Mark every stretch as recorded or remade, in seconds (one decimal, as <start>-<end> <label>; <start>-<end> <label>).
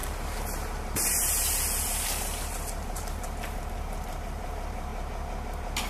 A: 0.0-4.9 remade; 4.9-5.9 recorded